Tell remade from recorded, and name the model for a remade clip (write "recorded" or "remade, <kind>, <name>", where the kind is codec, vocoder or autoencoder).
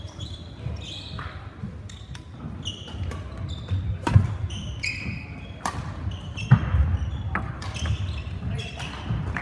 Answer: recorded